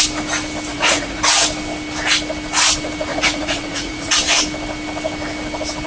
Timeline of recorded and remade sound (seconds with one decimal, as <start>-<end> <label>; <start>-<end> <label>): 0.0-0.7 recorded; 0.7-1.2 remade; 1.2-3.1 recorded; 3.1-4.1 remade; 4.1-5.9 recorded